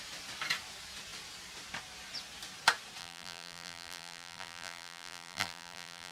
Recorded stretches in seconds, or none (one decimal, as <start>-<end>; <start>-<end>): 0.0-3.0